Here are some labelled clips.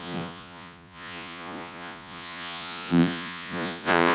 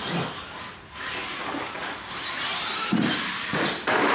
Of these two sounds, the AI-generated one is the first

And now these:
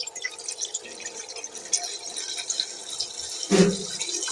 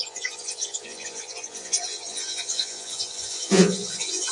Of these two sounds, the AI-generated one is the second